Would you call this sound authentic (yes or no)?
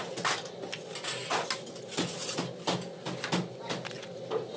yes